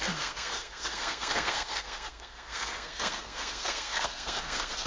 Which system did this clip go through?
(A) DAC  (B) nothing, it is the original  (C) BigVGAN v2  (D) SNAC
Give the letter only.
D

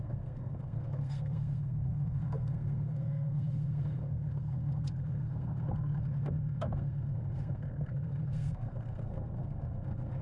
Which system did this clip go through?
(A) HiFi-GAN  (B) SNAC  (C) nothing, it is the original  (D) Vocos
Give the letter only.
B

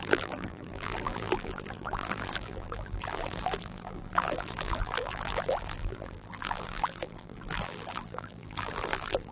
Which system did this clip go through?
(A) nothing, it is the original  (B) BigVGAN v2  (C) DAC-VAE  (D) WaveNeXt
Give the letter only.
B